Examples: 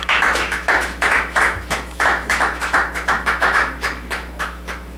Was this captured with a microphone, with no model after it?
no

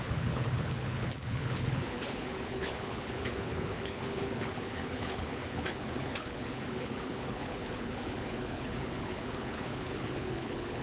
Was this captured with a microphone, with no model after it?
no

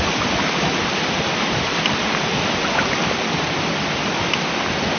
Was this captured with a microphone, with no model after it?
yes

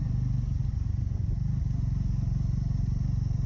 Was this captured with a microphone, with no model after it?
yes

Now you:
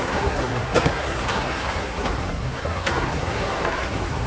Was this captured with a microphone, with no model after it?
no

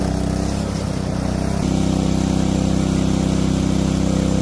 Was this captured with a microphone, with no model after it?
yes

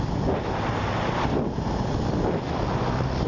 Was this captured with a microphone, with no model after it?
yes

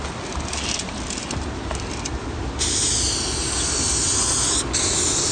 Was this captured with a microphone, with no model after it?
yes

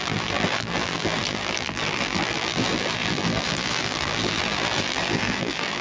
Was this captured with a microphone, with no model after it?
no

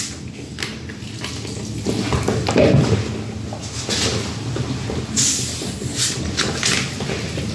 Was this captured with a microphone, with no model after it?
yes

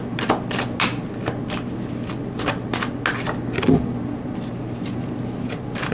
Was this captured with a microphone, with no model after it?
yes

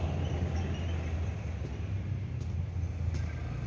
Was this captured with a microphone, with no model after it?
yes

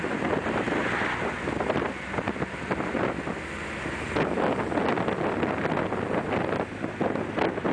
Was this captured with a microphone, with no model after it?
yes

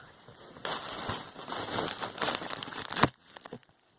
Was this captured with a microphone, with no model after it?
yes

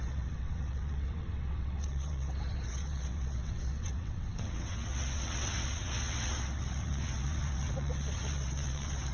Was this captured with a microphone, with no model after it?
no